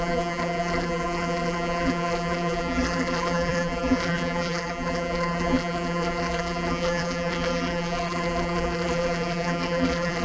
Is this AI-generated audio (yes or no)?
yes